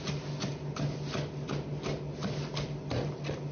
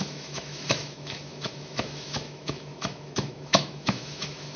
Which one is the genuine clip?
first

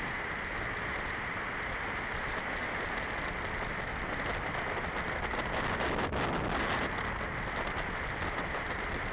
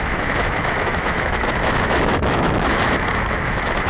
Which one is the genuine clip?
first